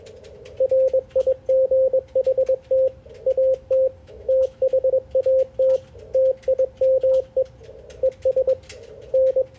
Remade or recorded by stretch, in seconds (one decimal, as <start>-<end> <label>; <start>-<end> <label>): 0.0-4.0 recorded; 4.0-4.9 remade; 4.9-9.6 recorded